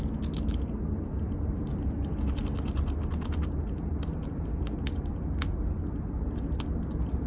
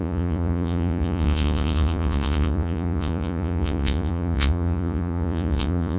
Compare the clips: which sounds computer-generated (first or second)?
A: second